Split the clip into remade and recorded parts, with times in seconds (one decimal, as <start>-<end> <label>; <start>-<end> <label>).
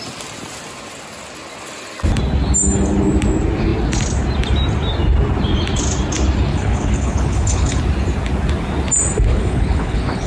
0.0-6.5 recorded; 6.5-7.8 remade; 7.8-9.3 recorded; 9.3-10.3 remade